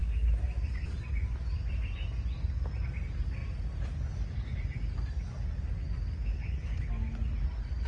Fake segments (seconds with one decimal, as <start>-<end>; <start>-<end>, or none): 6.3-6.9